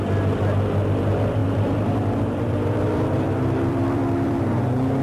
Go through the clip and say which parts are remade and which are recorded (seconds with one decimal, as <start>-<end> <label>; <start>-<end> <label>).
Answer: 0.0-1.4 recorded; 1.4-4.4 remade; 4.4-5.0 recorded